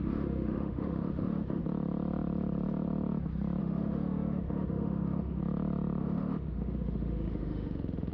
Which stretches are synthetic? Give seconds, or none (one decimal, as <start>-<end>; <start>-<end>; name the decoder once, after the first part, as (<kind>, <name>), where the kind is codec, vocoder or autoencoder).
0.0-1.6 (autoencoder, DAC-VAE); 3.6-5.4; 6.0-8.1

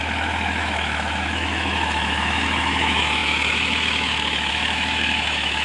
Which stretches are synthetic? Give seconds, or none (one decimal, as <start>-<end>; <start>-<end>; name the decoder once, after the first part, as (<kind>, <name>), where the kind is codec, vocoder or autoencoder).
0.0-5.6 (autoencoder, DAC-VAE)